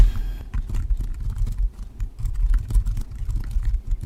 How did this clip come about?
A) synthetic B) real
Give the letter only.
B